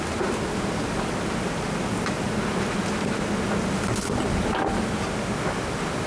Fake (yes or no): no